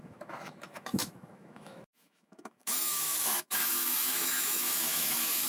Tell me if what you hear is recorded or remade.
remade